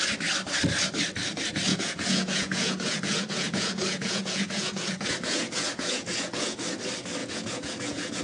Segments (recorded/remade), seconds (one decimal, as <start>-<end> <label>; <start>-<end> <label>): 0.0-1.7 recorded; 1.7-6.6 remade; 6.6-7.2 recorded; 7.2-8.2 remade